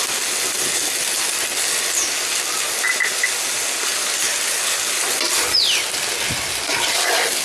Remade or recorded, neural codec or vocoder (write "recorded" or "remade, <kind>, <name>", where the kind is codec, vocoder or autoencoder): recorded